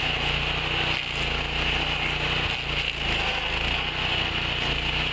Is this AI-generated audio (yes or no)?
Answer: no